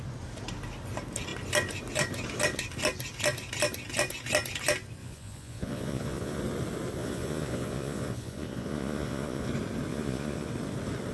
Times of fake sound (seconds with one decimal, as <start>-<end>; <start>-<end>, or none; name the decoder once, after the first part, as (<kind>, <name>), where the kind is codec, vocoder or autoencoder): 5.0-6.4 (vocoder, Vocos); 7.0-9.5; 9.9-10.5